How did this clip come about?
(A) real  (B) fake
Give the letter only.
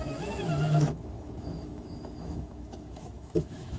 B